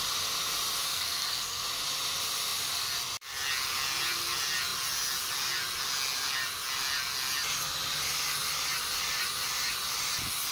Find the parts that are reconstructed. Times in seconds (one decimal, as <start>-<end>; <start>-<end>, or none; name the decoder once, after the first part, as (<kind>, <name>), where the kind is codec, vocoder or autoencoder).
0.9-1.6 (codec, SNAC)